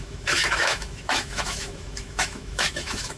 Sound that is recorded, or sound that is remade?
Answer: remade